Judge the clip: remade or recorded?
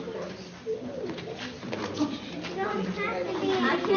recorded